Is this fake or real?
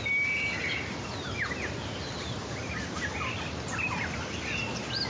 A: real